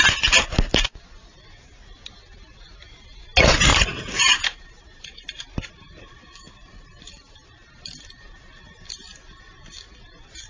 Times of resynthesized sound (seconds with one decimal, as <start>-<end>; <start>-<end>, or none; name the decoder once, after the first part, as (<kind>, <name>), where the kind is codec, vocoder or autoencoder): 3.7-7.7 (vocoder, BigVGAN v2)